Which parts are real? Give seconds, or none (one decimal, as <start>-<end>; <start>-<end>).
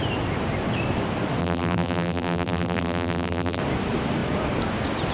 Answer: 0.0-1.4; 3.6-5.1